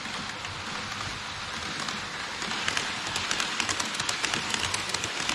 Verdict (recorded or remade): recorded